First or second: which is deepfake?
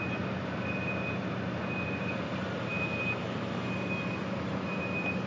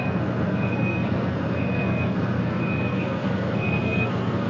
second